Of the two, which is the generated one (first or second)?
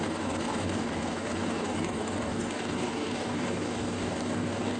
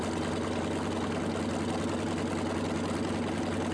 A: first